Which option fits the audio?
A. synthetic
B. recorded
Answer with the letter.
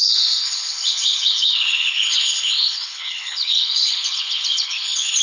A